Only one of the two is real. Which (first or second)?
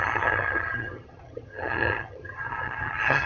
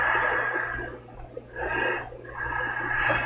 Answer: second